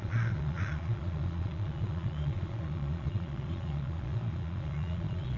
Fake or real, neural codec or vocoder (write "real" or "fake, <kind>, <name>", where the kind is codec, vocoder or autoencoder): fake, vocoder, Vocos